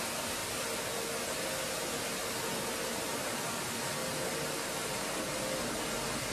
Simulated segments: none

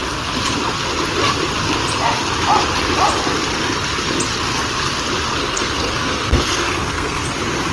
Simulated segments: 5.4-7.2 (codec, SNAC)

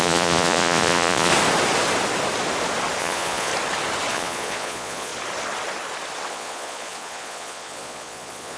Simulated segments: 0.0-1.3 (vocoder, Vocos); 3.0-3.5; 4.1-5.1; 6.3-8.6

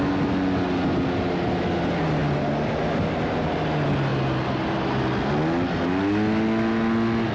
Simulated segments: none

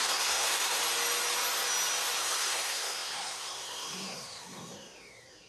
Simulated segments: 0.0-0.8 (codec, SNAC); 2.2-5.5